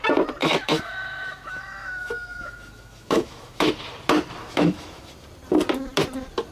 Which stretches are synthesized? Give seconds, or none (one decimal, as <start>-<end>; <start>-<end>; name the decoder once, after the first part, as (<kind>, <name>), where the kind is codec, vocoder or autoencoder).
0.4-3.7 (autoencoder, DAC-VAE); 4.4-5.1